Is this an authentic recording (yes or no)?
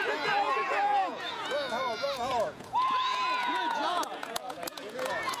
no